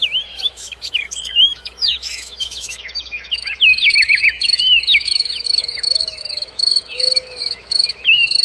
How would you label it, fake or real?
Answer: fake